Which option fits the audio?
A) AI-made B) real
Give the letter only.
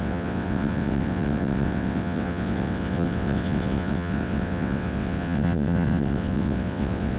A